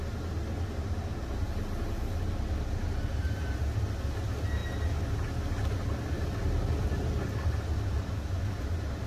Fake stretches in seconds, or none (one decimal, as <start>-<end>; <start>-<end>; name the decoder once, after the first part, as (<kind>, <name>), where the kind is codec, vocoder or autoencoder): none